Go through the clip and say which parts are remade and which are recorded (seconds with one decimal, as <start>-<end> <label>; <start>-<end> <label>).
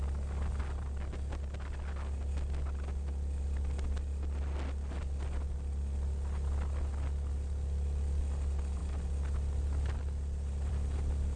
0.0-11.4 recorded